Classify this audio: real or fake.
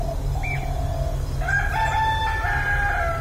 real